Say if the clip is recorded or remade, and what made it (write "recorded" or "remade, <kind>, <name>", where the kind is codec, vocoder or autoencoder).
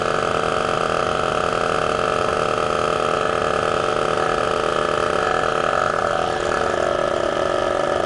recorded